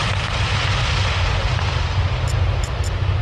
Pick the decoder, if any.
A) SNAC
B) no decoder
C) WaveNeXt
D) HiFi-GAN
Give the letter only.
B